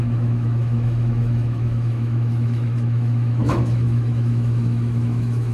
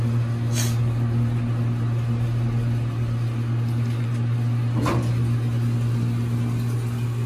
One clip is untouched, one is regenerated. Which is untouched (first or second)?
second